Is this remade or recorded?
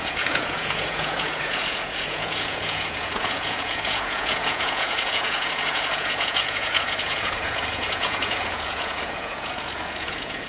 remade